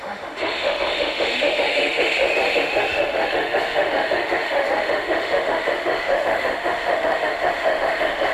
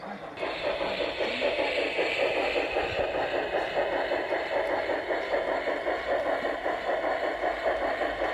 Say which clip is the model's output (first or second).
first